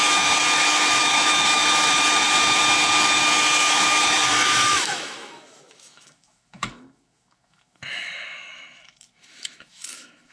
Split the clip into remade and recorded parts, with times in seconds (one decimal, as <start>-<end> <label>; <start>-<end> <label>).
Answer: 0.0-1.6 remade; 1.6-3.7 recorded; 3.7-10.3 remade